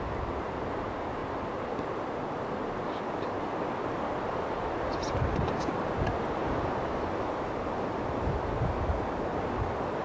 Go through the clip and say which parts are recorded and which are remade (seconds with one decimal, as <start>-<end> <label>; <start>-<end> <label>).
0.0-6.4 recorded; 6.4-8.7 remade; 8.7-10.0 recorded